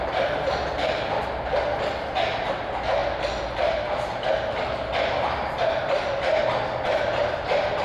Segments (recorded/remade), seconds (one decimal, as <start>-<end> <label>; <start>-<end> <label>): 0.0-7.8 recorded